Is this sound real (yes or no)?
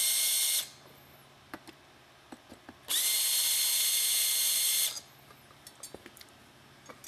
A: yes